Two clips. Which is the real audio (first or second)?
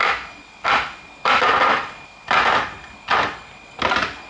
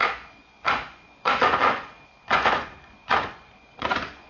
first